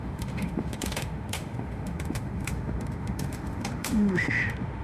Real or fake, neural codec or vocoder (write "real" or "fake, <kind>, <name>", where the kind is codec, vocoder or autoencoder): fake, autoencoder, DAC-VAE